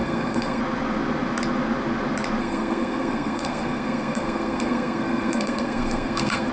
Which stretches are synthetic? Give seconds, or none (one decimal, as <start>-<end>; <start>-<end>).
0.0-0.6; 2.4-6.5